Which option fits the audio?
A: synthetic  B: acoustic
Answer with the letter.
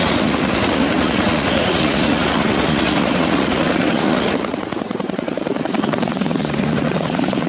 A